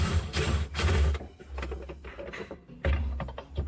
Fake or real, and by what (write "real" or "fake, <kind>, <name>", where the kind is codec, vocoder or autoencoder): real